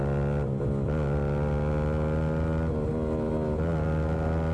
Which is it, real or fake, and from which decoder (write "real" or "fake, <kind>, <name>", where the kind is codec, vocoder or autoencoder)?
real